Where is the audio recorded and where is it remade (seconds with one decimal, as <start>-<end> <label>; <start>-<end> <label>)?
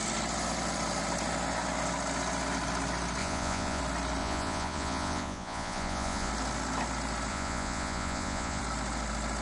0.0-3.2 recorded; 3.2-3.8 remade; 3.8-4.2 recorded; 4.2-6.3 remade; 6.3-7.3 recorded; 7.3-8.6 remade; 8.6-9.4 recorded